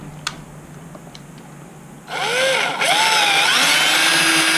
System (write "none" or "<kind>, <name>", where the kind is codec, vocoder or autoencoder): none